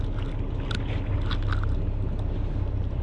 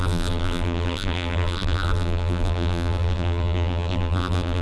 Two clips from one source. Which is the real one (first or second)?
first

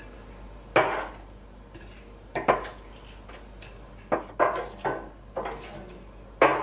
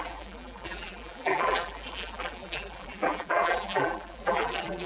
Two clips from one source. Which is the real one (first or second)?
first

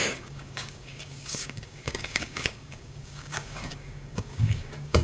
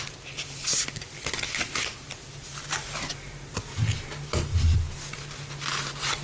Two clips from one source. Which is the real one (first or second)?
second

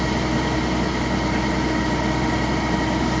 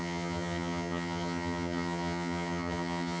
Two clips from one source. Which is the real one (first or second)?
first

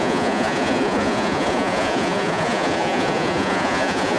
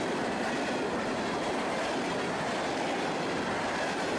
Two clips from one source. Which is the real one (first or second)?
second